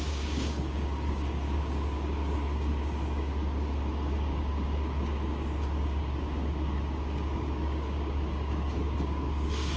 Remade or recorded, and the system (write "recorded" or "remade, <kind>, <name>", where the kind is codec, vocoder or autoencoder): remade, codec, DAC